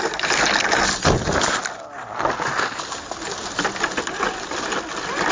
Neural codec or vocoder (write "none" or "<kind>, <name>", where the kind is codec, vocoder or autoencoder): none